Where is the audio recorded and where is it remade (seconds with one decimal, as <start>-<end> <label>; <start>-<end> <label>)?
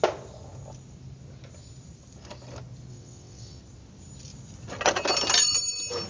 0.0-2.9 recorded; 2.9-3.6 remade; 3.6-6.1 recorded